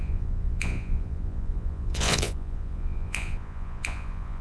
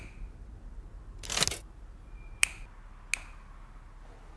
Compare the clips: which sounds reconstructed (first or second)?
first